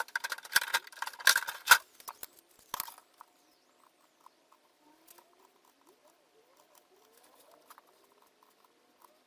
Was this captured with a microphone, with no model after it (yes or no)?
yes